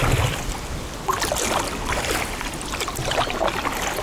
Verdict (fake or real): real